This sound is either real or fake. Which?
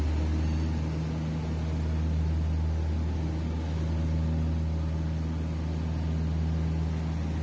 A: real